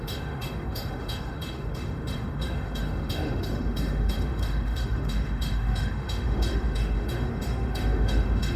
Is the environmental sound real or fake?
fake